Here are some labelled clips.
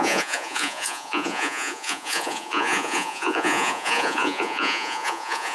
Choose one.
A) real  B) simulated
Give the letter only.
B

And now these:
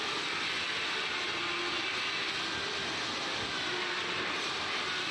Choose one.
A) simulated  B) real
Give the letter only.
B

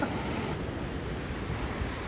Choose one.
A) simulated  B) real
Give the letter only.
B